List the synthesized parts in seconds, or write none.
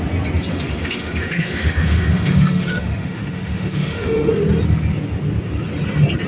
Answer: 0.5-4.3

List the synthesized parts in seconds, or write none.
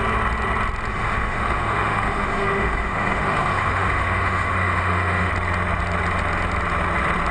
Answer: 0.9-5.3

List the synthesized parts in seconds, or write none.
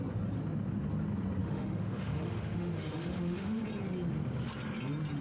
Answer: 1.4-3.6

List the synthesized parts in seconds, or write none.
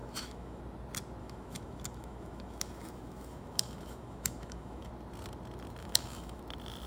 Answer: 0.0-0.6; 1.2-4.9; 5.8-6.4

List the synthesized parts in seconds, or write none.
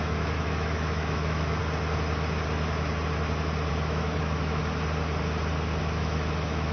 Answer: 0.0-1.6; 3.7-4.6; 5.8-6.7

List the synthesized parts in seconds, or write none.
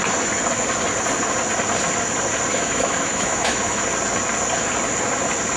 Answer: 2.5-3.8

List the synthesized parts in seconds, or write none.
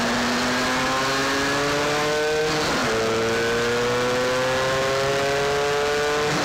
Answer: none